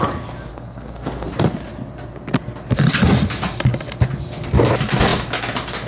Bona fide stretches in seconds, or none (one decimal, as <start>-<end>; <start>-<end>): 0.0-0.5; 1.3-5.9